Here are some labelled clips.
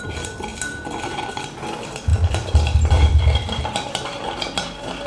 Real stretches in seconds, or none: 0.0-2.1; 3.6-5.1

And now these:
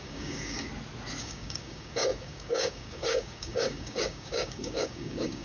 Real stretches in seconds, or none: 0.7-1.2

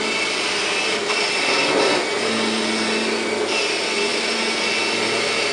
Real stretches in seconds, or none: 0.0-5.5

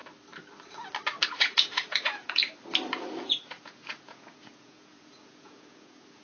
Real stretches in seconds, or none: 0.0-1.3; 2.4-3.2

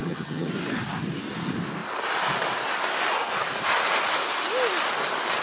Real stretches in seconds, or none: 0.5-5.4